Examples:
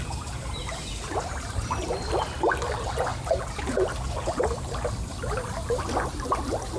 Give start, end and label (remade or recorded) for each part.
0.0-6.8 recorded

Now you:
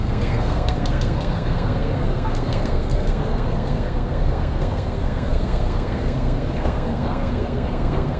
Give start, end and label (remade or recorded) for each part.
0.0-8.2 remade